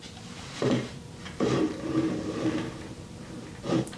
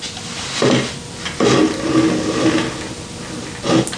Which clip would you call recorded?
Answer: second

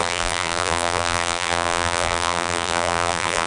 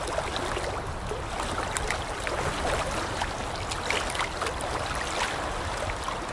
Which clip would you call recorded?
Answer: second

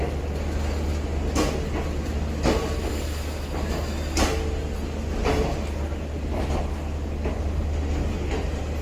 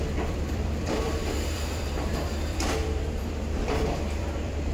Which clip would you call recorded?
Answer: first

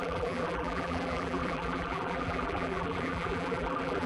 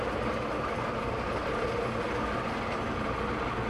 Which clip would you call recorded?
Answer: second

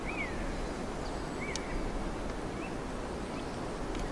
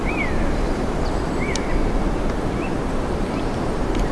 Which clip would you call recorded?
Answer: first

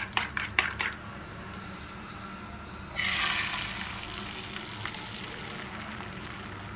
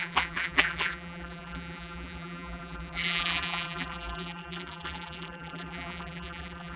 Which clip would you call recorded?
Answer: first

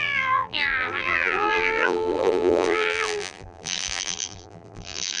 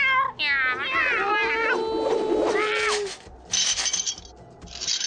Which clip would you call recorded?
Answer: second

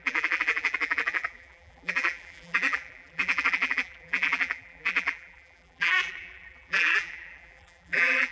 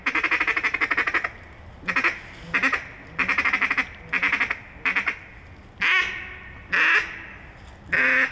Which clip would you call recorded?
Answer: second